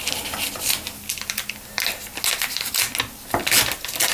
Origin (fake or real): real